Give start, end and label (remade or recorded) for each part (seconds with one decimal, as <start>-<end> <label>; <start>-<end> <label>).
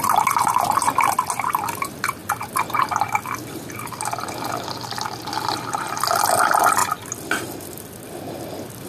0.0-8.9 recorded